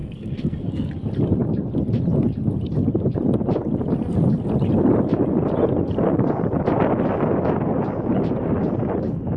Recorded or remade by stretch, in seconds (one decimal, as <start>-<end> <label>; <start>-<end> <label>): 0.0-0.9 remade; 0.9-9.4 recorded